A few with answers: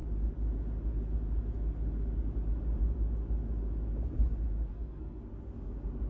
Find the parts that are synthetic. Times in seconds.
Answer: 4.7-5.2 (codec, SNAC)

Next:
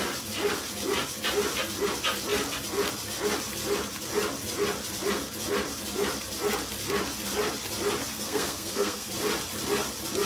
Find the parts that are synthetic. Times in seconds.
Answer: 8.1-9.1 (codec, SNAC)

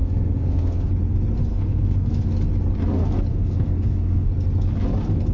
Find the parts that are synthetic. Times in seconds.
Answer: 0.0-0.9 (codec, SNAC); 1.5-2.1; 3.3-4.3

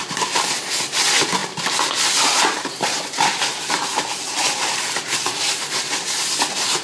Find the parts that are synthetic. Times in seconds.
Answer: none

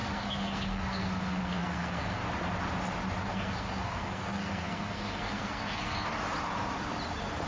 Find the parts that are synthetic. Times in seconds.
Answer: 0.0-2.2 (codec, SNAC); 3.2-6.1

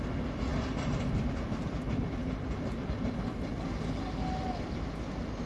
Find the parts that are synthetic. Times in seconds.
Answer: none

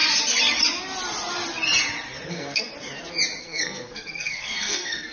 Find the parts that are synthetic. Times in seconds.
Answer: 2.3-2.7 (codec, SNAC); 3.4-5.1

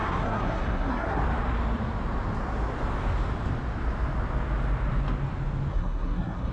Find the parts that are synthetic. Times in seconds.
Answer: 0.0-1.2 (codec, SNAC); 5.7-6.5